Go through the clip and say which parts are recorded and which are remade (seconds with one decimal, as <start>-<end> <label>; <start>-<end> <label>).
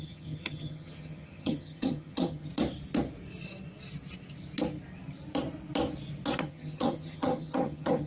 0.0-2.5 remade; 2.5-6.4 recorded; 6.4-8.1 remade